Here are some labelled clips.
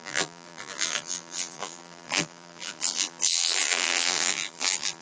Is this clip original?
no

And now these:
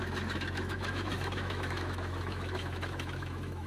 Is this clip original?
no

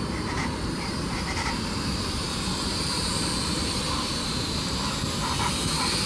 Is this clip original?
no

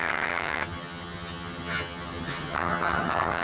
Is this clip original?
no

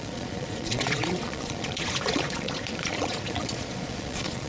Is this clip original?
no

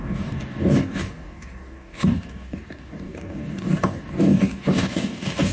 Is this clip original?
no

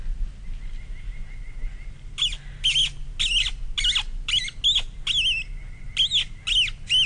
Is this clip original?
yes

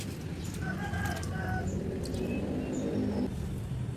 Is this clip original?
yes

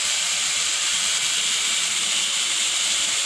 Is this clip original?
no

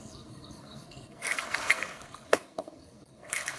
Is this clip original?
no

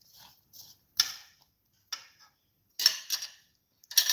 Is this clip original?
yes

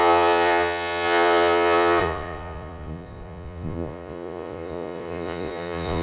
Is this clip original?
no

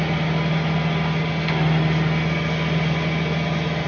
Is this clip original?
yes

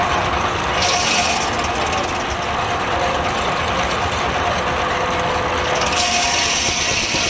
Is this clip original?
yes